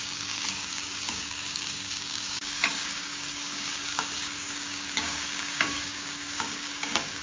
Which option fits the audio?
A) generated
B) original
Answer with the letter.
A